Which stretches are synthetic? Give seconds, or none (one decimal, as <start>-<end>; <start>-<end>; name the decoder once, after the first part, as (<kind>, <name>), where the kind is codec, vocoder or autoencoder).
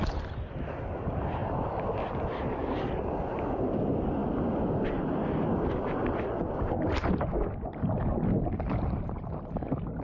1.4-2.0 (vocoder, BigVGAN v2)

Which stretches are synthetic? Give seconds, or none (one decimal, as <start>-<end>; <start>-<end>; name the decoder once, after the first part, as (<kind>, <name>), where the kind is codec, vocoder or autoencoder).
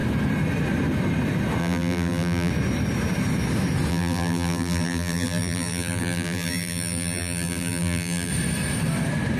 1.6-2.5 (vocoder, BigVGAN v2); 3.9-8.3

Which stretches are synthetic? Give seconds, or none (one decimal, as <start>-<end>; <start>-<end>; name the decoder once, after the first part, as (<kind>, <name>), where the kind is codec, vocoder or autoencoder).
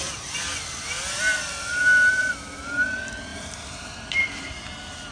3.3-5.1 (vocoder, BigVGAN v2)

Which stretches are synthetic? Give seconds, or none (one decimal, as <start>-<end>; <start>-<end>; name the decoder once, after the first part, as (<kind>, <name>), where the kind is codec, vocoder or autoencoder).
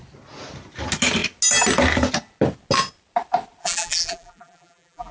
3.6-5.1 (vocoder, BigVGAN v2)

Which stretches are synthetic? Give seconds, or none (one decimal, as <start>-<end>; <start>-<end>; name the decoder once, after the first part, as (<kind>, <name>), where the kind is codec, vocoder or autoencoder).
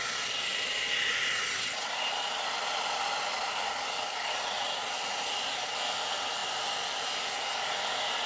0.5-4.3 (vocoder, BigVGAN v2); 4.8-5.3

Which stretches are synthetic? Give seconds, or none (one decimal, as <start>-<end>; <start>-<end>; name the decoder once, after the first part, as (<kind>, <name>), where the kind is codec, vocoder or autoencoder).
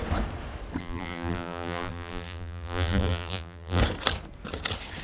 0.8-3.8 (vocoder, BigVGAN v2)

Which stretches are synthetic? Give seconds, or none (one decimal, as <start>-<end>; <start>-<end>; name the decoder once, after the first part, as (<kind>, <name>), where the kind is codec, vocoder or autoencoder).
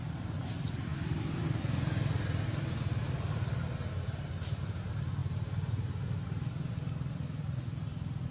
0.9-1.4 (vocoder, BigVGAN v2)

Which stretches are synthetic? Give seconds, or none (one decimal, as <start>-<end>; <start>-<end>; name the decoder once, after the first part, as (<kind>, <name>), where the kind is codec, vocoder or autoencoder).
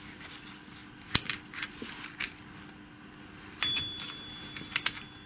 none